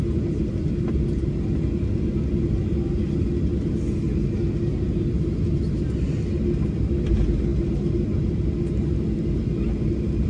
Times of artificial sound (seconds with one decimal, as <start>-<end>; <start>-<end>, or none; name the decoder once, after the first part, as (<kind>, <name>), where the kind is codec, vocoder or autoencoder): none